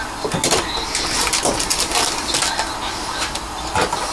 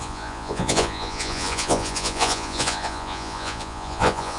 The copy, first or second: second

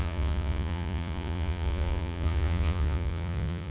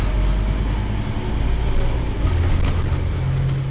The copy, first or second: first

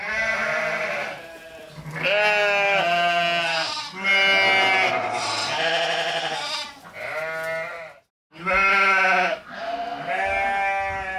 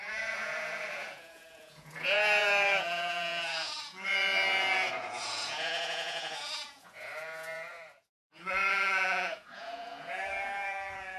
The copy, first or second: second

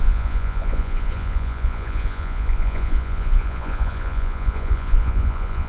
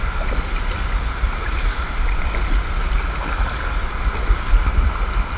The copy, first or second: first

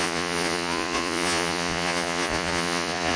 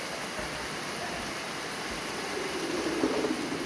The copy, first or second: first